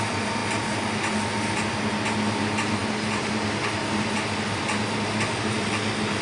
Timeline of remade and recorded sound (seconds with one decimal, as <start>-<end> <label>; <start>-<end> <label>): 0.0-6.2 recorded